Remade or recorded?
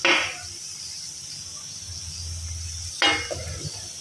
recorded